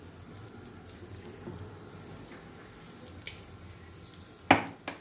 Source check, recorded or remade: recorded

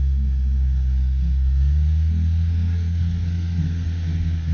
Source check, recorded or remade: remade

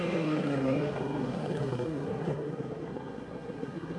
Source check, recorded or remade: remade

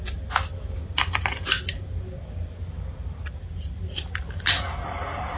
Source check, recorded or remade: recorded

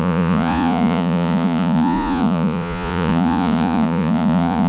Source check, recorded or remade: remade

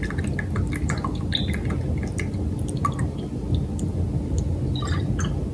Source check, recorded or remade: recorded